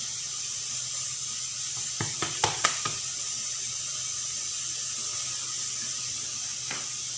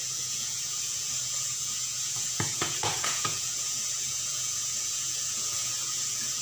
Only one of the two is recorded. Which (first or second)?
first